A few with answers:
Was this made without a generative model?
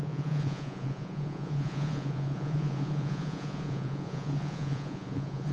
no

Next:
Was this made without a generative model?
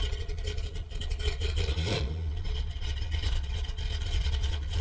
no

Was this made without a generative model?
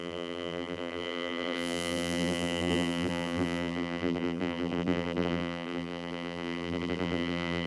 no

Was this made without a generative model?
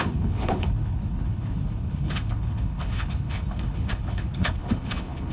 no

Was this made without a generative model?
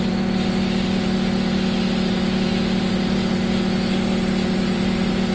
yes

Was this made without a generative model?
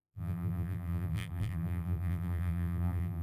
no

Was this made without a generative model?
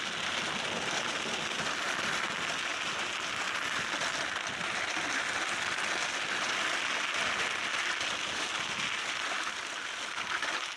yes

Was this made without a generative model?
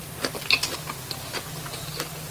yes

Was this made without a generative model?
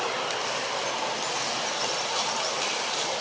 yes